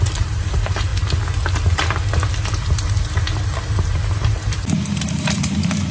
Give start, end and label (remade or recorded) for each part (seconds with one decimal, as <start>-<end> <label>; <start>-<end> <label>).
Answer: 0.0-0.9 remade; 0.9-3.8 recorded; 3.8-5.9 remade